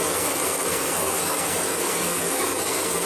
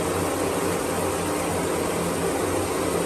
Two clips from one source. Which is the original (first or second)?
second